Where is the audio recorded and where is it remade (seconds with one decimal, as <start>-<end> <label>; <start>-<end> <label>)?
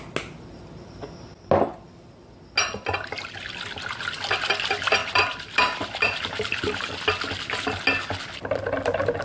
0.0-5.0 recorded; 5.0-7.0 remade; 7.0-9.2 recorded